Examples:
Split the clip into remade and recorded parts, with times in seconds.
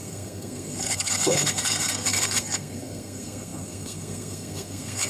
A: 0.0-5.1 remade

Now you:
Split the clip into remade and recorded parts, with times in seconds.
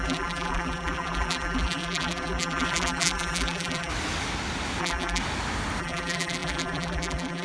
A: 0.0-3.9 remade; 3.9-4.8 recorded; 4.8-5.2 remade; 5.2-5.8 recorded; 5.8-7.4 remade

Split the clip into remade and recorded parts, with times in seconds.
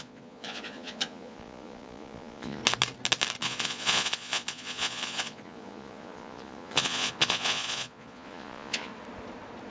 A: 0.0-2.6 remade; 2.6-3.4 recorded; 3.4-8.9 remade; 8.9-9.7 recorded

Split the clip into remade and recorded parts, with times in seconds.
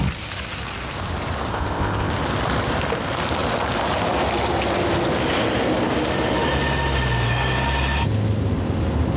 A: 0.0-1.5 recorded; 1.5-2.1 remade; 2.1-9.2 recorded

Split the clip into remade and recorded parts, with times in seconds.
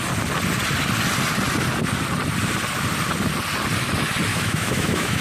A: 0.0-4.3 recorded; 4.3-5.2 remade